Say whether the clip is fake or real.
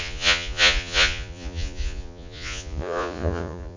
fake